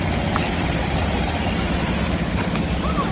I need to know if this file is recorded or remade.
recorded